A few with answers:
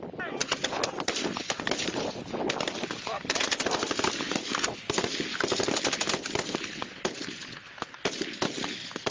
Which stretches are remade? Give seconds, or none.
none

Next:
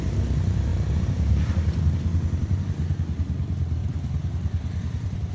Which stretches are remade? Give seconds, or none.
3.8-5.3

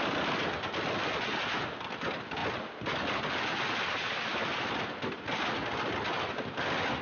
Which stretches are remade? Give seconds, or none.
none

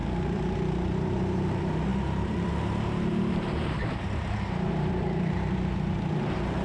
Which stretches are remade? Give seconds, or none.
0.0-6.6

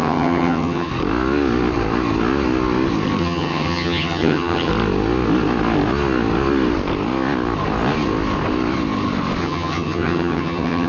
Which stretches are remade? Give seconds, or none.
0.0-0.9; 3.2-4.7; 9.4-10.9